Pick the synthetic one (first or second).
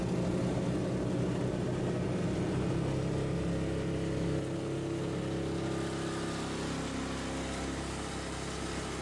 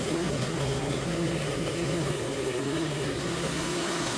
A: second